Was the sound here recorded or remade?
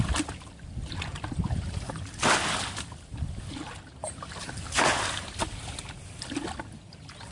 recorded